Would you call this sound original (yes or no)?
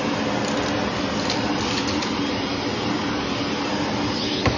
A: yes